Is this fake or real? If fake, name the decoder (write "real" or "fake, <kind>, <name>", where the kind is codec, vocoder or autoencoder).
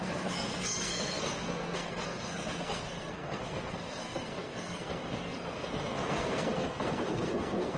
fake, codec, SNAC